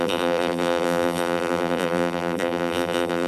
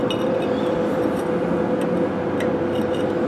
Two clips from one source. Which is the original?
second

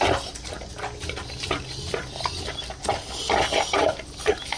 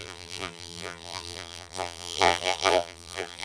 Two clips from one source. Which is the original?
first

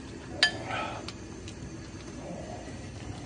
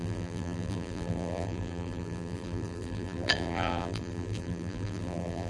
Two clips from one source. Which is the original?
first